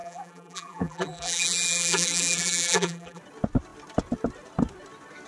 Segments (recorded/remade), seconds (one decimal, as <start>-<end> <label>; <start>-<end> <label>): 0.0-3.2 remade; 3.2-5.3 recorded